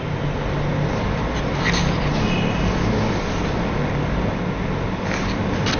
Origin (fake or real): real